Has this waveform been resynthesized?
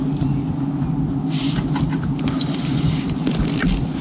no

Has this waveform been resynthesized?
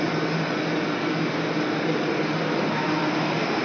no